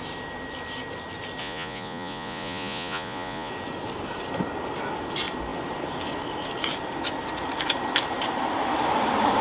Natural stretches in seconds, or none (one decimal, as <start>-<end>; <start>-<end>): 0.0-1.4; 3.5-9.4